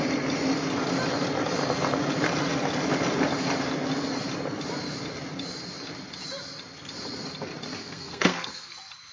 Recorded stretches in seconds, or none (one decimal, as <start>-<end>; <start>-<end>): 0.0-7.8; 8.7-9.1